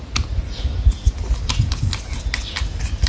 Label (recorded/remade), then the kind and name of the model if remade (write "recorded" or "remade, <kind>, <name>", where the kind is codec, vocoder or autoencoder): recorded